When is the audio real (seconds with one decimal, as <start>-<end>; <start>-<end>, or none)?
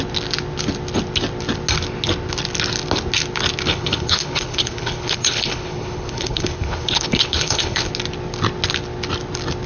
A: 0.0-3.7; 7.9-9.7